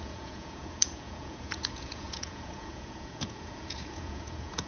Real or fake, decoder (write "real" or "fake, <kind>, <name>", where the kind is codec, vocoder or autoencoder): fake, vocoder, Vocos